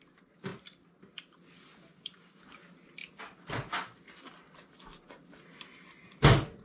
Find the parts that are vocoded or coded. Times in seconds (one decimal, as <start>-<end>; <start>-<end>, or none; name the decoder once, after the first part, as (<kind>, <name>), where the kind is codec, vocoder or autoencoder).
1.9-2.4 (codec, DAC)

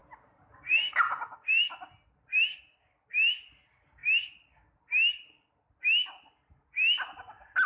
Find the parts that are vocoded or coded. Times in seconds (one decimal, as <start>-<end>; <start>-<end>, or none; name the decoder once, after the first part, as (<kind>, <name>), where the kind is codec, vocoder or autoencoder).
none

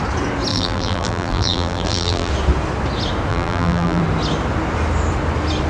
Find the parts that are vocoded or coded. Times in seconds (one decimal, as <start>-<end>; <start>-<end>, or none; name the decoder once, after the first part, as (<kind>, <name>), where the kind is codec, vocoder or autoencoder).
0.5-2.3 (vocoder, BigVGAN v2); 3.3-4.0

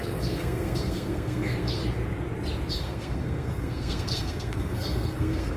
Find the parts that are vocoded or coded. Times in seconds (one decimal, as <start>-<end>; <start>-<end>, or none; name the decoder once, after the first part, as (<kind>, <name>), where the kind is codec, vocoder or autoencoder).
0.0-1.8 (codec, SNAC); 2.7-5.6

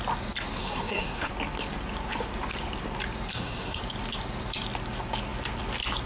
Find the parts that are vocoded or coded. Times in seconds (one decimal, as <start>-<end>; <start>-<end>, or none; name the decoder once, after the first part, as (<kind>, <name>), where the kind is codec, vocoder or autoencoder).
0.6-1.3 (codec, SNAC); 3.3-3.8